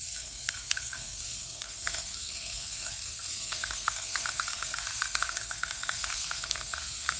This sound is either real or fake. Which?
fake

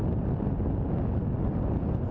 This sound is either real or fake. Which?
real